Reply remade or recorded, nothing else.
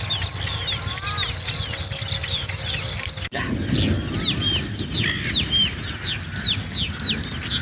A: recorded